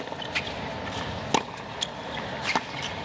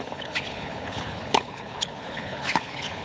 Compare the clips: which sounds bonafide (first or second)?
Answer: first